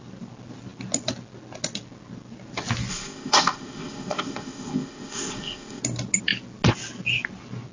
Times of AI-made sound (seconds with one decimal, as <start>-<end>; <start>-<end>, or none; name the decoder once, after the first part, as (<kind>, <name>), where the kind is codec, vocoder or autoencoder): 2.9-5.8 (codec, ZipCodec)